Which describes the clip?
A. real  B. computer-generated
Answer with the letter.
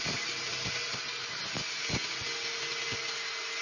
A